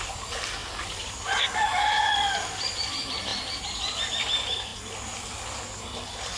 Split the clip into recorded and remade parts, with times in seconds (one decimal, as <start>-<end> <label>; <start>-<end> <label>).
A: 0.0-3.3 remade; 3.3-4.1 recorded; 4.1-4.7 remade; 4.7-5.8 recorded; 5.8-6.4 remade